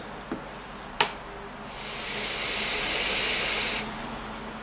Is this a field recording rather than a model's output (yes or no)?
yes